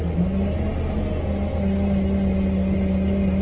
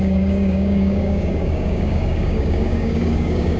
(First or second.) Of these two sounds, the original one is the first